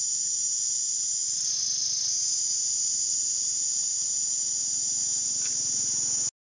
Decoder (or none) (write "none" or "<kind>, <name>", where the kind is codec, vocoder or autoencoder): none